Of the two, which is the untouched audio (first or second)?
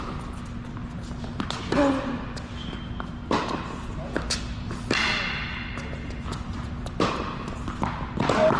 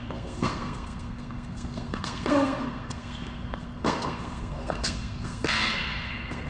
first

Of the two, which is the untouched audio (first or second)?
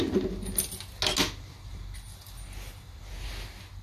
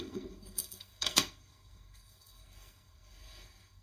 first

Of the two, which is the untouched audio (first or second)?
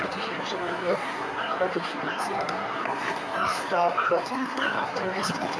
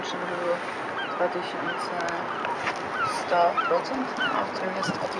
second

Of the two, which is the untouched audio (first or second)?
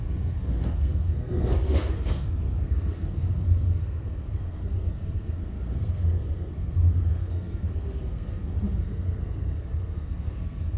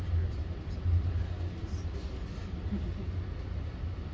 second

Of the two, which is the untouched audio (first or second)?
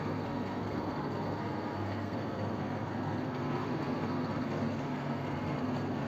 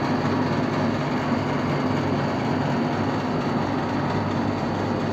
second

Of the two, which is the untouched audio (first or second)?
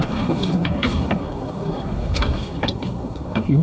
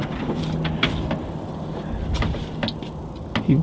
second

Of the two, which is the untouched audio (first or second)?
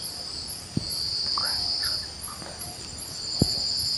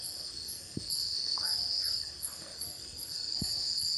first